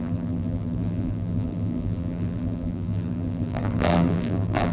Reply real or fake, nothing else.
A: fake